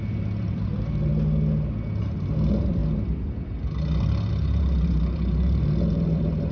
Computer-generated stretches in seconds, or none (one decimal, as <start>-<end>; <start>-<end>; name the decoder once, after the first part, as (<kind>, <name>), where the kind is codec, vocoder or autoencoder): 0.0-1.1 (vocoder, BigVGAN v2); 2.0-2.8; 4.3-6.5